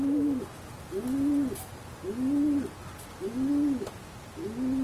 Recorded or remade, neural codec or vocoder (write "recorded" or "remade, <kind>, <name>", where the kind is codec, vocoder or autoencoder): recorded